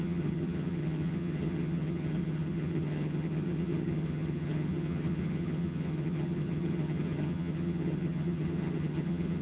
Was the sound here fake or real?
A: fake